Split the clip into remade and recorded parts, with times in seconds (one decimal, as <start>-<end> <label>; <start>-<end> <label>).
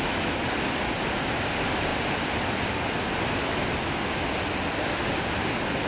0.0-5.9 recorded